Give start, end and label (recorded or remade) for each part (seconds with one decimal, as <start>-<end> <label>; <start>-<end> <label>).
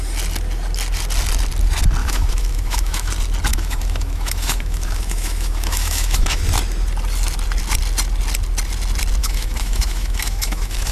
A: 0.0-2.0 recorded; 2.0-3.1 remade; 3.1-3.5 recorded; 3.5-6.4 remade; 6.4-9.2 recorded; 9.2-10.9 remade